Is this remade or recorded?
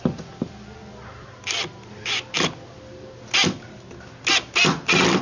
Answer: recorded